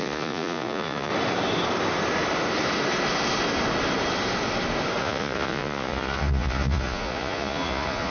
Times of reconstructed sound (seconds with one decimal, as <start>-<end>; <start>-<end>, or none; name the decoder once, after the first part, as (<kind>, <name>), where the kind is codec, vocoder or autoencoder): 0.0-1.1 (vocoder, Vocos); 5.0-8.1